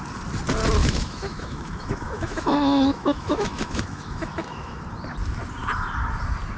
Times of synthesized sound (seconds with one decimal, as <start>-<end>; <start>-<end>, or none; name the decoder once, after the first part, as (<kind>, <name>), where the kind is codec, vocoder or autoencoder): 0.8-4.8 (autoencoder, DAC-VAE)